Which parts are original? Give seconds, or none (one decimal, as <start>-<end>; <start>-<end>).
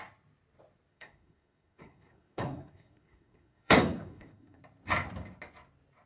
0.0-0.9; 4.6-6.1